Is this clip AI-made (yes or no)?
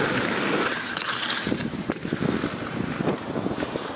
no